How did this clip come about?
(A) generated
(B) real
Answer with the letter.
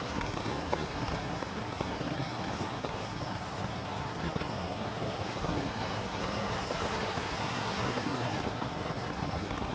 A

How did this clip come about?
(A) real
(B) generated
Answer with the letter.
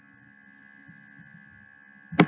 A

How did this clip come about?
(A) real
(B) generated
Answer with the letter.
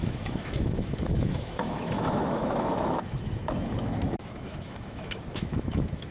B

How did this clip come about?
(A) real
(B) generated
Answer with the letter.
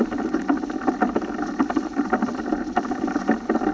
A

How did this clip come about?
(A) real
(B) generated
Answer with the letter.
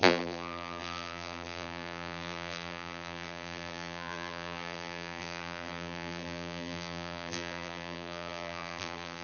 B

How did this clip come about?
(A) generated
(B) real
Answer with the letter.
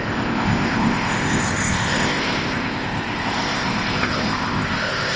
A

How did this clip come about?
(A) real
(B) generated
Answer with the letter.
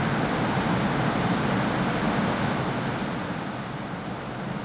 A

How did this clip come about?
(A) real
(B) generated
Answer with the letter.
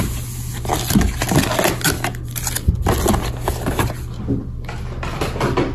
A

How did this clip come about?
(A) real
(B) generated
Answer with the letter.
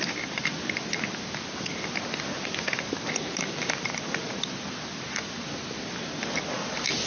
A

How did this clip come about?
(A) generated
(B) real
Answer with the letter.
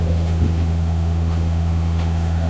A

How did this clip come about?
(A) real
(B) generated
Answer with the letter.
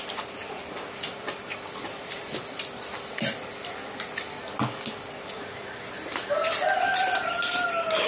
A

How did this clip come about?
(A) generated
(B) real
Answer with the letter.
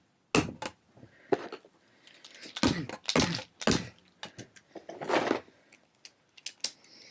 B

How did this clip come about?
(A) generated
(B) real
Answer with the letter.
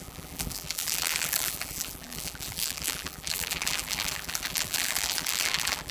A